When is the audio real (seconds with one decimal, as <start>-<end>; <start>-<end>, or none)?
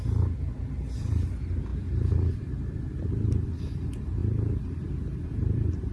0.0-5.9